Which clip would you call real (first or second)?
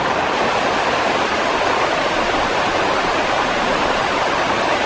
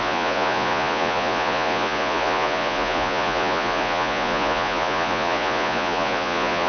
first